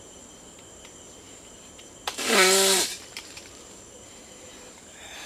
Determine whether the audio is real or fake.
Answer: fake